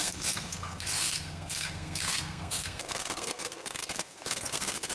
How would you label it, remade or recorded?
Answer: remade